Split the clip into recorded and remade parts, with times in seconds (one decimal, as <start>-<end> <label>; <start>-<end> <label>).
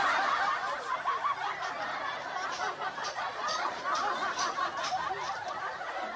0.0-3.0 recorded; 3.0-3.8 remade; 3.8-6.2 recorded